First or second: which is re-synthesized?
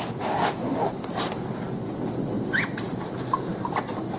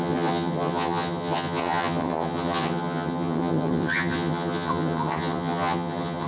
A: second